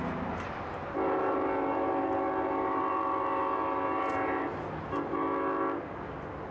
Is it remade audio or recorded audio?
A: recorded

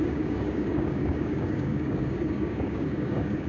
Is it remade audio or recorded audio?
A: remade